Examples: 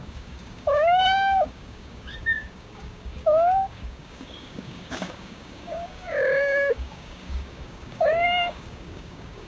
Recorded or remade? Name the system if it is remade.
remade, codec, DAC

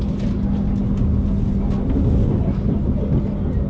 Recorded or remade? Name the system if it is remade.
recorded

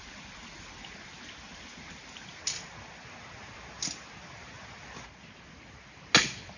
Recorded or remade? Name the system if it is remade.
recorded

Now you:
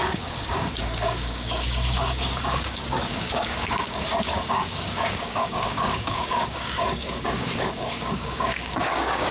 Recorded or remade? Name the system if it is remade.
remade, codec, DAC